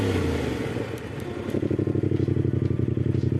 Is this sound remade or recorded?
recorded